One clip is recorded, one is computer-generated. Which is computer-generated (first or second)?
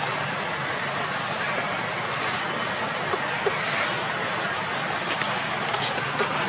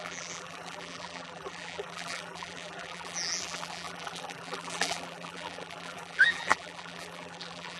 second